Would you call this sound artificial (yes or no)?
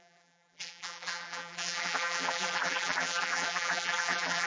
yes